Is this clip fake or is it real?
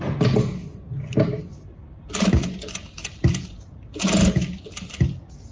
real